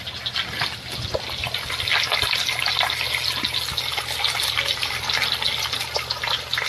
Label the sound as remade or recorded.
recorded